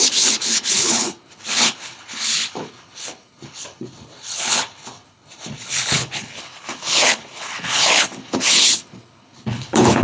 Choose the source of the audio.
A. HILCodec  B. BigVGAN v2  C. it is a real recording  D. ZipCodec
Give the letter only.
A